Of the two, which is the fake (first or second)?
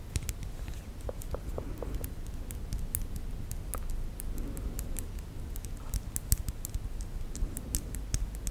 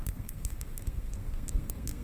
second